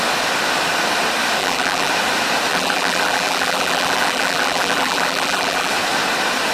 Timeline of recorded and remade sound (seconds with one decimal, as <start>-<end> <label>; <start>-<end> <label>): 0.0-1.4 recorded; 1.4-1.9 remade; 1.9-2.5 recorded; 2.5-5.7 remade; 5.7-6.5 recorded